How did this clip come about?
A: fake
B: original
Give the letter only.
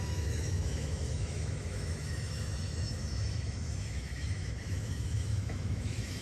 A